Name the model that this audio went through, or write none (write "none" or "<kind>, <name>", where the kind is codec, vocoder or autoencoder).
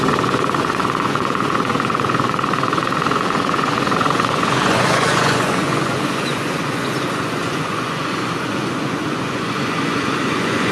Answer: vocoder, Vocos